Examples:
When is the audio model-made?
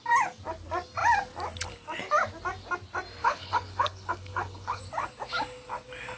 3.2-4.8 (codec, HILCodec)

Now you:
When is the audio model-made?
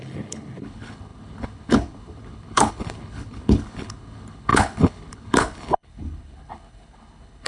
0.0-7.5 (codec, HILCodec)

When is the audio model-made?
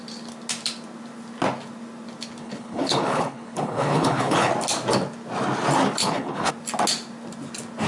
2.4-4.5 (codec, HILCodec); 6.0-6.5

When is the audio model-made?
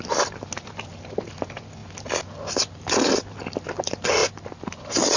none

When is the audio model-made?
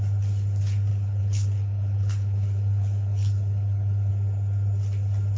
0.9-4.1 (codec, HILCodec)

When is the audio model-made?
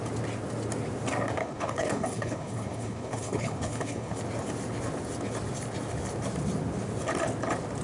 1.4-4.2 (codec, HILCodec)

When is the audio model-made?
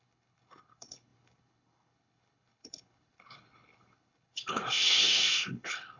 0.0-6.0 (codec, HILCodec)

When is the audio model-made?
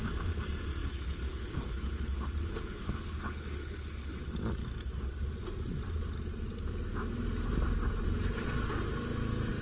0.8-4.2 (codec, HILCodec)